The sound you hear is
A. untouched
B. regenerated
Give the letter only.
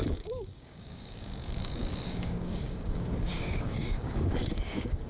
B